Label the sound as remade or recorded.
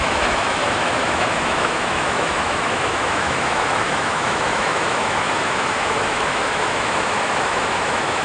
remade